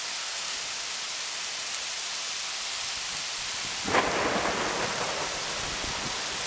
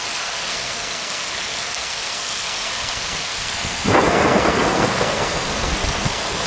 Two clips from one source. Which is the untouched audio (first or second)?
first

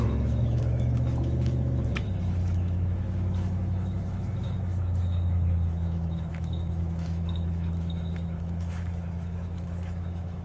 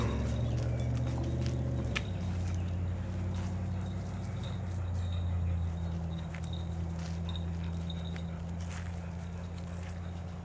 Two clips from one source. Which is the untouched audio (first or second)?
second